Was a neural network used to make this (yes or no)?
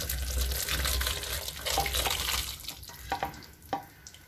no